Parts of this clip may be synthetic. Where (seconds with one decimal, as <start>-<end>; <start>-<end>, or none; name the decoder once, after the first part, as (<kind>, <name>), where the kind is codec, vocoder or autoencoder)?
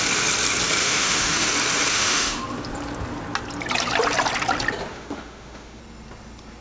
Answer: 0.8-1.5 (autoencoder, DAC-VAE); 1.9-2.4; 4.9-5.8